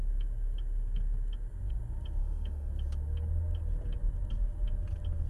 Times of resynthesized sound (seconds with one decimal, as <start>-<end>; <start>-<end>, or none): 2.2-2.7